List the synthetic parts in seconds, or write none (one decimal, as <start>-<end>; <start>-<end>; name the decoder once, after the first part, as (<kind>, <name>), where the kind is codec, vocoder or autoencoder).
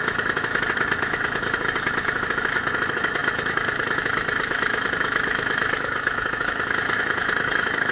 0.0-7.9 (autoencoder, DAC-VAE)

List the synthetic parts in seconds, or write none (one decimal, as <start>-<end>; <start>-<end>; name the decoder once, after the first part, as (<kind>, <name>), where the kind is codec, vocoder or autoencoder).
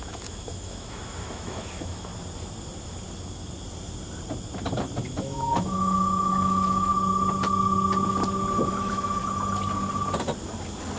0.0-2.1 (autoencoder, DAC-VAE); 5.0-6.9; 8.7-9.2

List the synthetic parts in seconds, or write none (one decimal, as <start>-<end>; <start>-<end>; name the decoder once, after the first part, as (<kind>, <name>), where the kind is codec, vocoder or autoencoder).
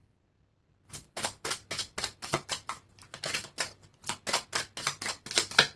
none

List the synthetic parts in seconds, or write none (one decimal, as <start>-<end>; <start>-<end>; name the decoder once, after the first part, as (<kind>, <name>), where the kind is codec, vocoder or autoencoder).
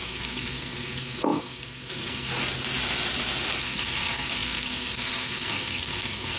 0.0-2.3 (codec, SNAC); 3.6-6.4